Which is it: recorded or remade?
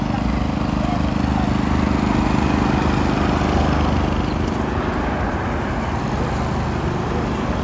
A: recorded